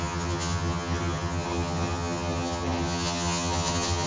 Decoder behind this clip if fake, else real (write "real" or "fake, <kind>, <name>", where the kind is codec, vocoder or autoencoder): fake, vocoder, HiFi-GAN